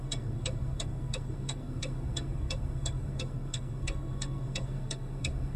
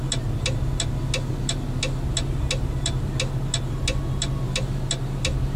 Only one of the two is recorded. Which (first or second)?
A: second